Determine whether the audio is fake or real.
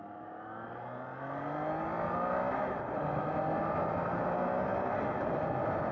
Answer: real